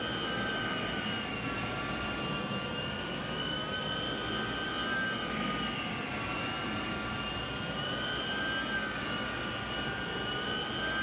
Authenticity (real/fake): real